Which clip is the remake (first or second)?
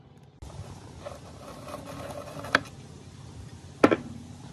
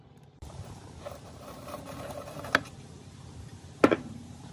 second